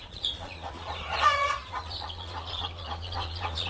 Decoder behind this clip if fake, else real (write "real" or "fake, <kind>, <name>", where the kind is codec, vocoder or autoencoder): fake, vocoder, Vocos